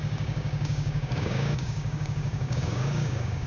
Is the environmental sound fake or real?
fake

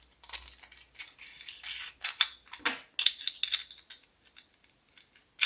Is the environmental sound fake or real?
real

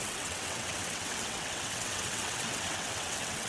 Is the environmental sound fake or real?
fake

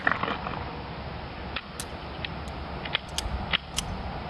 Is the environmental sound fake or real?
real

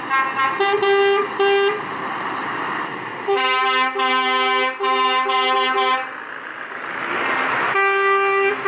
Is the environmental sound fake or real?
real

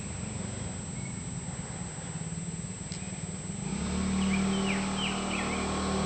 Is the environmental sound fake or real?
real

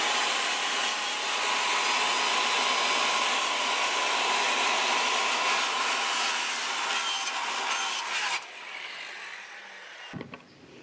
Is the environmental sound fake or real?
real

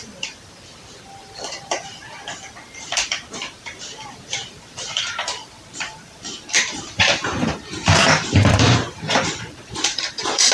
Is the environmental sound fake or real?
fake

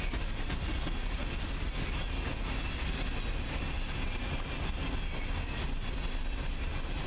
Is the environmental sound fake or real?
real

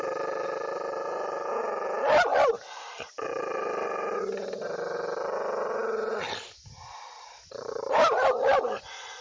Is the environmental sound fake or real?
real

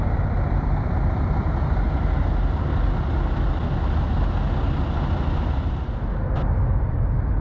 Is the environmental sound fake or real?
real